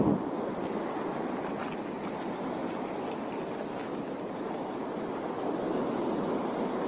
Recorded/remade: recorded